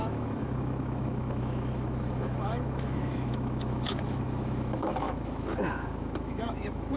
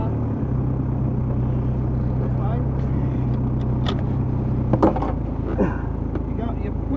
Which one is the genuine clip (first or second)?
second